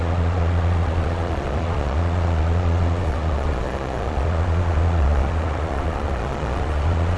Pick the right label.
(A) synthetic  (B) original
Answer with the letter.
A